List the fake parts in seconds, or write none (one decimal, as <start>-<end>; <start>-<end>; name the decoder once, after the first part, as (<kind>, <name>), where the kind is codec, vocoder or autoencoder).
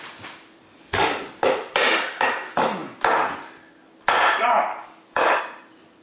0.6-1.2 (codec, DAC); 4.7-5.4